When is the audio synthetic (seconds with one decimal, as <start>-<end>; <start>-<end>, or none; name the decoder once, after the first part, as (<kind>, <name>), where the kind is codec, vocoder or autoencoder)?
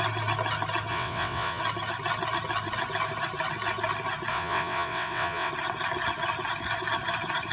0.9-1.6 (vocoder, WaveNeXt); 4.3-5.5